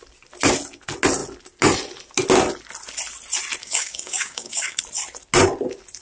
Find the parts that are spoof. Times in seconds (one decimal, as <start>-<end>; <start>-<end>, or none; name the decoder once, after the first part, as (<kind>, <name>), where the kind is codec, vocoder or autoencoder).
3.6-4.8 (codec, DAC)